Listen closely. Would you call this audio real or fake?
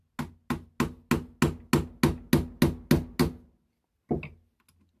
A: real